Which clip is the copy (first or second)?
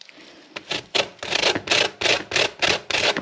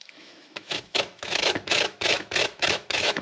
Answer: second